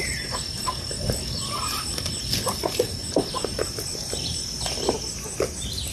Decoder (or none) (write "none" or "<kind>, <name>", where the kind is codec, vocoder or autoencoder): none